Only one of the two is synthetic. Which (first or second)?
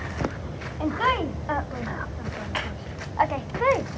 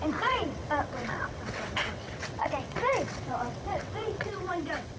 second